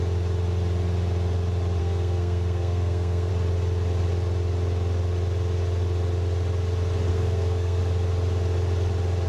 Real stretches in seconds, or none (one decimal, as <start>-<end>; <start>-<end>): 0.0-1.8; 3.3-7.1; 7.8-9.3